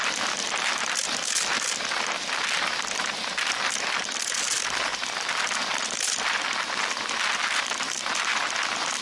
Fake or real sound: real